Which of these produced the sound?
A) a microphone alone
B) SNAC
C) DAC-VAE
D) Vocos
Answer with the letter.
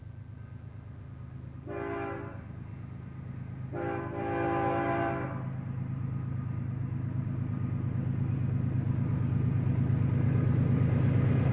A